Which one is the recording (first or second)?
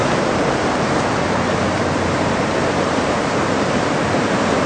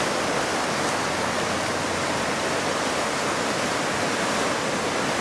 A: second